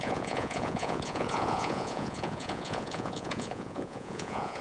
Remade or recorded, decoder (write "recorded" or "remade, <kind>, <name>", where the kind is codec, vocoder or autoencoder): remade, vocoder, Vocos